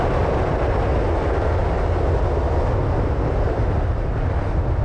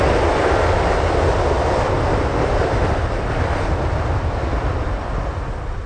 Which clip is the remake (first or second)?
second